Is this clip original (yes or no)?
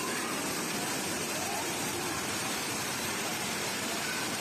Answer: no